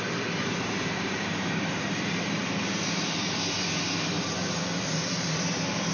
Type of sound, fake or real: fake